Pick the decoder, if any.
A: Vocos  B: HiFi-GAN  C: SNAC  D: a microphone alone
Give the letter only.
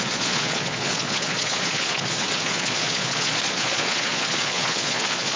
A